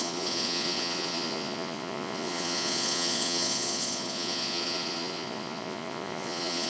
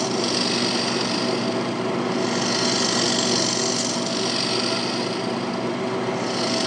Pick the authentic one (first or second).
second